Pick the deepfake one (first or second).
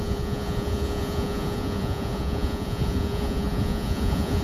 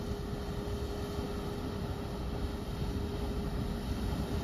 first